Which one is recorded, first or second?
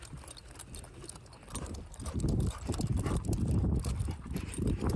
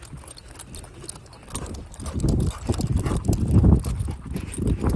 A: second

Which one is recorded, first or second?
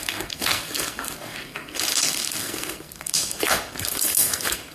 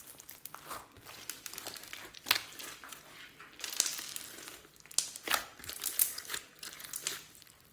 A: second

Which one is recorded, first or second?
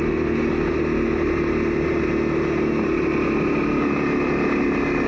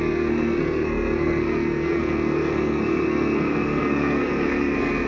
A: first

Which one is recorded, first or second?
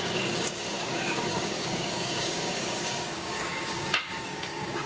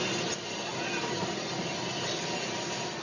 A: second